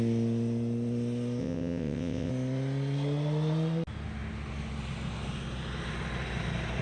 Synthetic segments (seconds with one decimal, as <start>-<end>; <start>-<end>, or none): 1.4-2.3